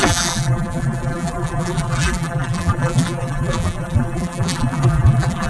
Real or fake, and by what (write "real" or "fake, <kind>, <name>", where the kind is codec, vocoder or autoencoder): fake, vocoder, BigVGAN v2